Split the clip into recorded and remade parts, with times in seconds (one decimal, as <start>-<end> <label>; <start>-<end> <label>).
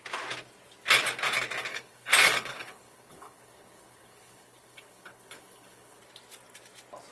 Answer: 0.0-1.7 recorded; 1.7-6.0 remade; 6.0-7.1 recorded